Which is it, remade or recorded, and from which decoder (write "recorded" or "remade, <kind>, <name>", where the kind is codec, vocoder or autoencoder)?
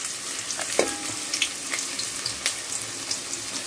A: recorded